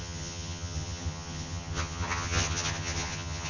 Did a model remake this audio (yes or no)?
yes